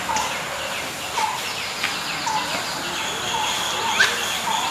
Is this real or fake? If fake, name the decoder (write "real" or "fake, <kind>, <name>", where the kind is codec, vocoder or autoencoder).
real